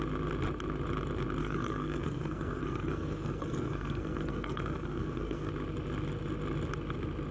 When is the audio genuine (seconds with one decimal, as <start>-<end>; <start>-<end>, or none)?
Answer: 0.0-1.4; 5.5-7.3